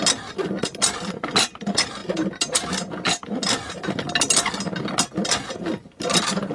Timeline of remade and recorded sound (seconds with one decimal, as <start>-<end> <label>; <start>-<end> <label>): 0.0-6.5 recorded